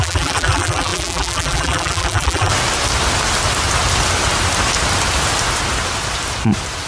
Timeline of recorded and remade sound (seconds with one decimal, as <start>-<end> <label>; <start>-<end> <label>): 0.0-2.5 remade; 2.5-6.9 recorded